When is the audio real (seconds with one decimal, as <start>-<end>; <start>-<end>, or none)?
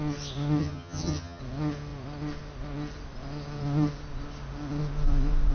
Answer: 0.0-0.6; 1.4-5.5